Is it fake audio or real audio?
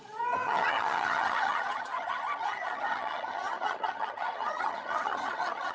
fake